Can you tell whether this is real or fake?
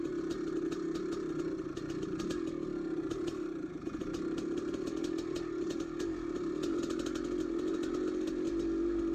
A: real